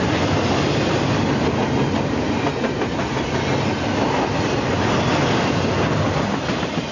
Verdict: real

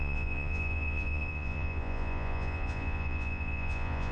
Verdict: fake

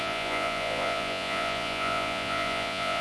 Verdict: fake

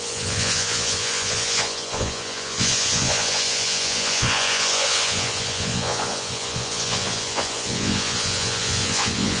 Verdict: fake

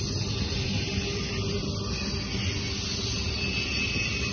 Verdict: real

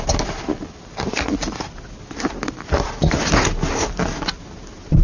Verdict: real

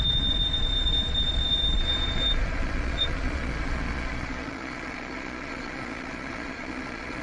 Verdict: fake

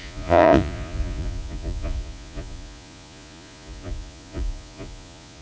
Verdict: fake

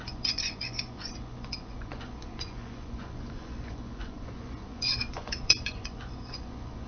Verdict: fake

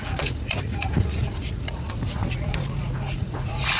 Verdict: fake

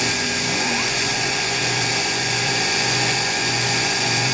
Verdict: fake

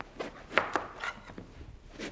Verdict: real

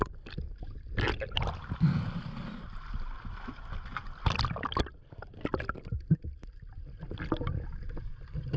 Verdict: real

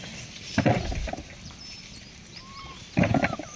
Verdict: real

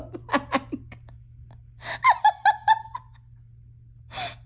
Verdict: real